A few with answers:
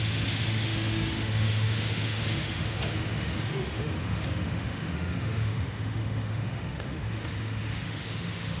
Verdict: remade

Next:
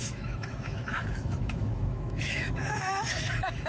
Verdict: remade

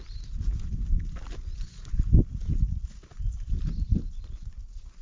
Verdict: recorded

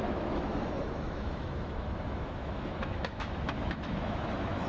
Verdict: remade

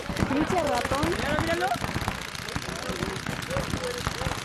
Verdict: recorded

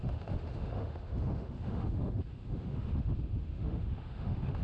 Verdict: remade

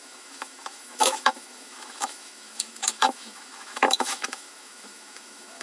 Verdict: remade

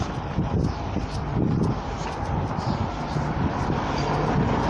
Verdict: recorded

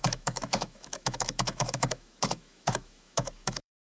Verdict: remade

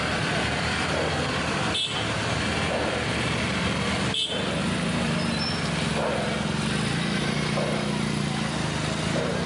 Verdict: recorded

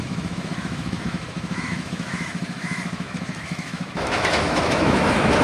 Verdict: remade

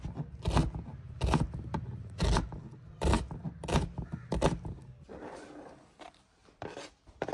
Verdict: recorded